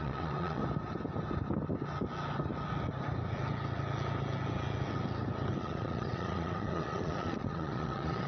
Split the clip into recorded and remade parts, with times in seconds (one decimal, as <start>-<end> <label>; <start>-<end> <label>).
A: 0.0-0.6 remade; 0.6-5.6 recorded; 5.6-8.3 remade